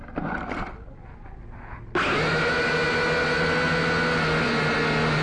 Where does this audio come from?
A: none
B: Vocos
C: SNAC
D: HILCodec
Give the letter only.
A